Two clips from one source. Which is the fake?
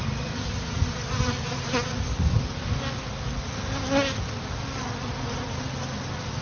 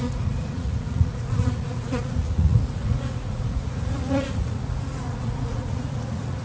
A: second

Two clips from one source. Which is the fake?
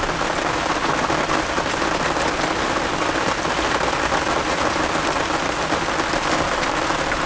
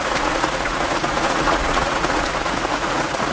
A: second